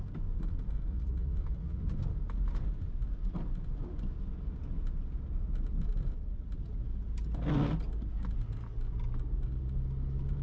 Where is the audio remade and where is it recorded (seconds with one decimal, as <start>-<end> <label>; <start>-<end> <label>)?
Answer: 0.0-0.9 recorded; 0.9-1.8 remade; 1.8-10.4 recorded